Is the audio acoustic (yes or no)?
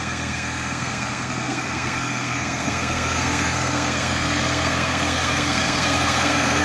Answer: no